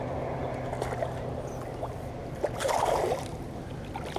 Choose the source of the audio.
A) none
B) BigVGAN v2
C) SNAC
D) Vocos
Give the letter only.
A